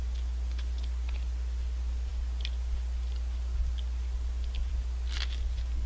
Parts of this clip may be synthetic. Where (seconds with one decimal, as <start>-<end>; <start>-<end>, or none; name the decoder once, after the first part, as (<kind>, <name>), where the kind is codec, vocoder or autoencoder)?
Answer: none